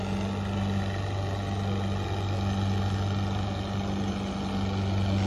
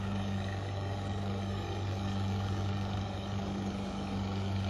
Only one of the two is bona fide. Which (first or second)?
first